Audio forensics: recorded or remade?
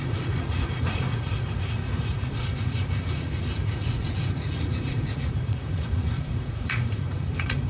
remade